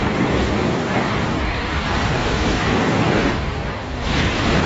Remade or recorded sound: remade